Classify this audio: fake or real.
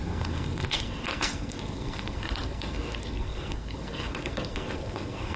fake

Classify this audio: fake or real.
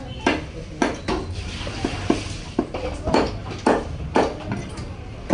real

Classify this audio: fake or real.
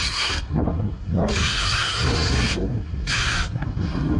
fake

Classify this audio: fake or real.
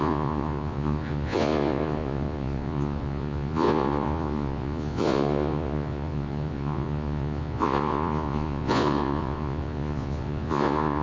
fake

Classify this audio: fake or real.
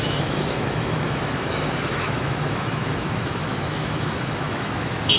fake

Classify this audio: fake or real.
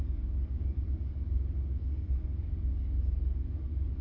fake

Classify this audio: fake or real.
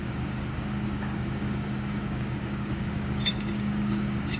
fake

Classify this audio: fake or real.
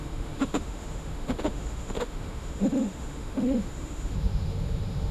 fake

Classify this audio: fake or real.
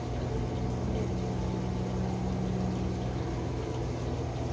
real